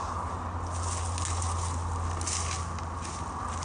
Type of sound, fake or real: real